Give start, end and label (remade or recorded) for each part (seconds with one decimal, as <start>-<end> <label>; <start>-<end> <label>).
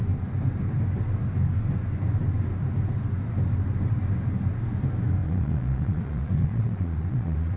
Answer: 0.0-5.2 recorded; 5.2-7.6 remade